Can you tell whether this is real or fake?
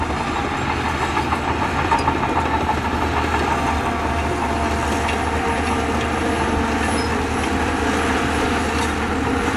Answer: real